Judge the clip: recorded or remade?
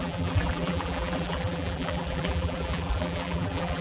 remade